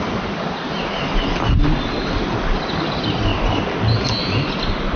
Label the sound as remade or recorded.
recorded